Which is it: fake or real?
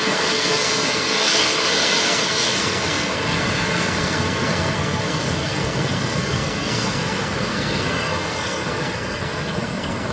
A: fake